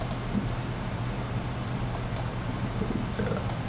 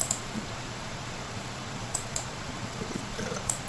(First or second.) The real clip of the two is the first